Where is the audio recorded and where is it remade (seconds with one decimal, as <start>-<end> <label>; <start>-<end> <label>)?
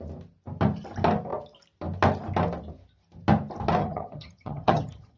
0.0-3.8 recorded; 3.8-5.2 remade